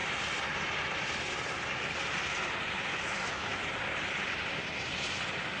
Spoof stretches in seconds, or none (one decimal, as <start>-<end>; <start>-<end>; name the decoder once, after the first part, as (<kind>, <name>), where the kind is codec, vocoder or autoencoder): 2.9-3.7 (autoencoder, DAC-VAE)